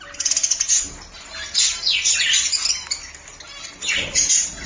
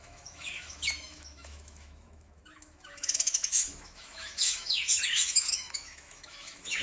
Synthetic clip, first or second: second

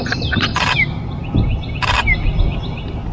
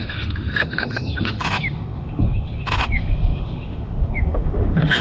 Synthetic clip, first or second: second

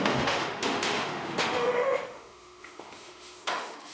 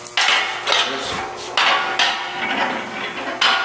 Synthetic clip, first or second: first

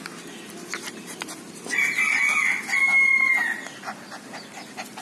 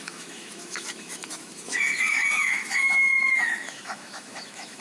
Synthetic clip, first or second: second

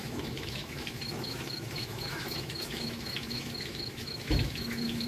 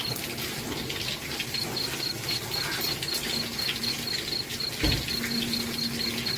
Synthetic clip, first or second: first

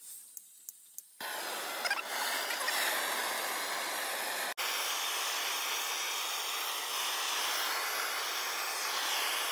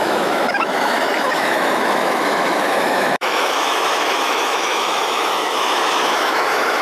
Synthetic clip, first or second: second